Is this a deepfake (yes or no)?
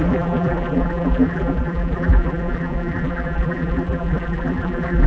yes